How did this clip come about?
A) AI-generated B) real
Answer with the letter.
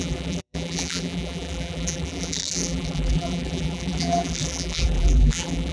A